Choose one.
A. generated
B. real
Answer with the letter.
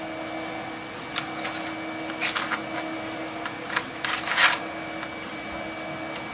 B